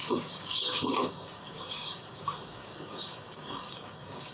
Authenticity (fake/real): fake